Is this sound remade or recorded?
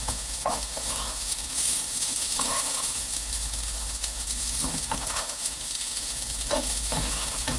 remade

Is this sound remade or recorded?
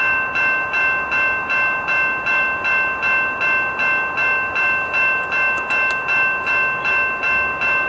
recorded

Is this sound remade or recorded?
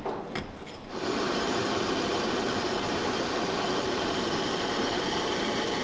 remade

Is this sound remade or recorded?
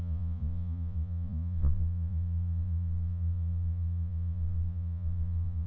remade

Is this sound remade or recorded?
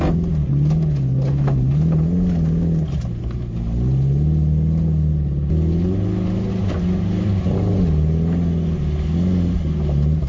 recorded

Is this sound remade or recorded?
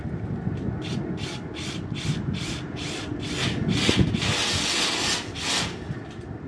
recorded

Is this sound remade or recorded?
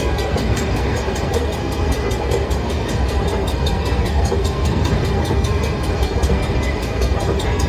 remade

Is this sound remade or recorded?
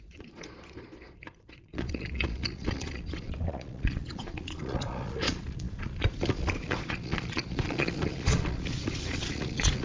remade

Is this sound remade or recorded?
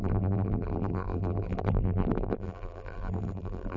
remade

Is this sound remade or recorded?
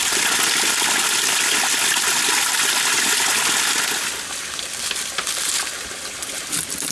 recorded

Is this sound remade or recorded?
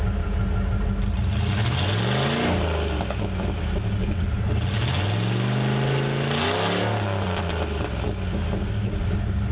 recorded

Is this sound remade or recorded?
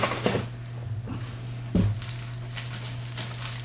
recorded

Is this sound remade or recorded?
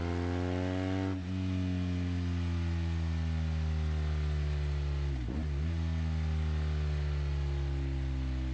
recorded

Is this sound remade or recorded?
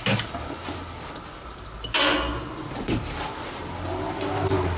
recorded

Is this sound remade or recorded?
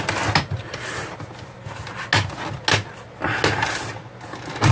recorded